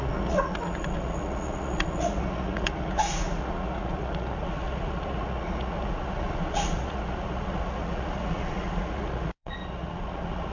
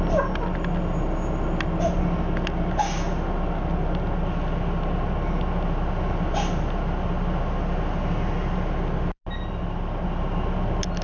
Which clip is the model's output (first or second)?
first